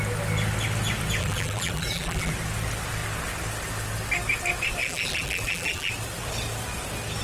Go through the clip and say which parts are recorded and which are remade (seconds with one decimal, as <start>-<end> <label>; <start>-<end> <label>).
0.0-1.2 recorded; 1.2-2.3 remade; 2.3-4.8 recorded; 4.8-5.9 remade; 5.9-7.2 recorded